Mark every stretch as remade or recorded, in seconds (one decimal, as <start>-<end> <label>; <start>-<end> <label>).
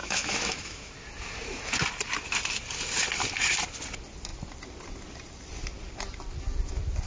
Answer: 0.0-0.9 remade; 0.9-7.1 recorded